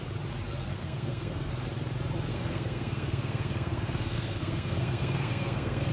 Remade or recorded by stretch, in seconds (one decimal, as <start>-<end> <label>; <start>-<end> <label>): 0.0-0.7 recorded; 0.7-1.5 remade; 1.5-2.3 recorded; 2.3-5.9 remade